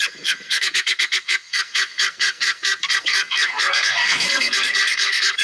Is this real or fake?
fake